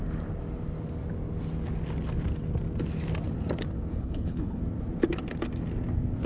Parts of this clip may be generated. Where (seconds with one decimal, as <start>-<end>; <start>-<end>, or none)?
3.9-4.6